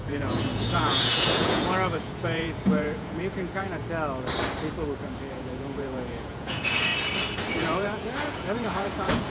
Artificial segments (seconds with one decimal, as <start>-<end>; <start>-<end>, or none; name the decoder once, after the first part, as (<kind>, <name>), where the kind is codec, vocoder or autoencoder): 0.0-3.8 (vocoder, Vocos); 5.3-6.9; 7.5-9.3